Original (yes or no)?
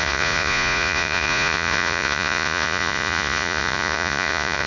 no